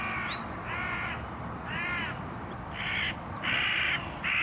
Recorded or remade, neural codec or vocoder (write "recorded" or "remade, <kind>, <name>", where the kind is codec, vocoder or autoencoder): recorded